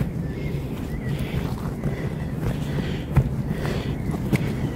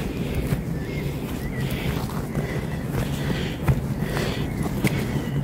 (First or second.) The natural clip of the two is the second